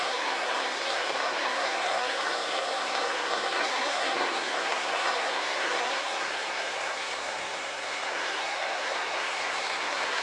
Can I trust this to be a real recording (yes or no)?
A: no